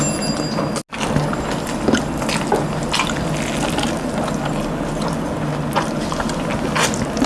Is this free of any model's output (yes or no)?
yes